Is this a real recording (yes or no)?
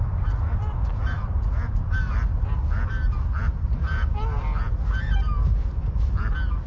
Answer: yes